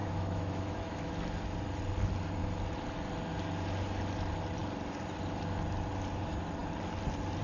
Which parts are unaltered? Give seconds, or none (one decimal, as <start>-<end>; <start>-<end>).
1.1-7.4

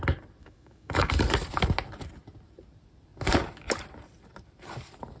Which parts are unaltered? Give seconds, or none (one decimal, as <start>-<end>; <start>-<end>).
0.0-0.4; 1.1-5.2

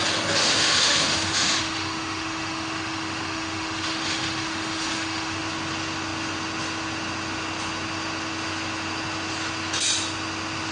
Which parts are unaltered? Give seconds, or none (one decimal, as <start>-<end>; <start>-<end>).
0.0-0.4; 5.4-10.7